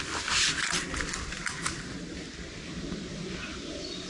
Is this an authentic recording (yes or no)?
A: yes